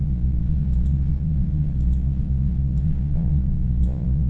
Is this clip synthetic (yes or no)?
yes